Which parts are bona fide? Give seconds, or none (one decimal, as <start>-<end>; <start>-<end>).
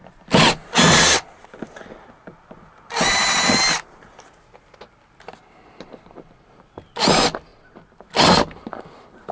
0.0-9.3